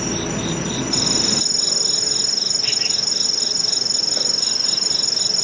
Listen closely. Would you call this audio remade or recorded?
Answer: recorded